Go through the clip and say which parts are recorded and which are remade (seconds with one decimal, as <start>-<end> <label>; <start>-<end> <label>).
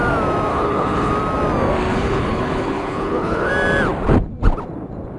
0.0-0.5 recorded; 0.5-1.1 remade; 1.1-1.9 recorded; 1.9-3.5 remade; 3.5-5.2 recorded